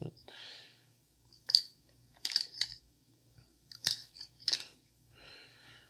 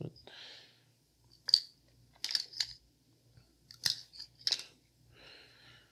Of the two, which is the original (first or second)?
second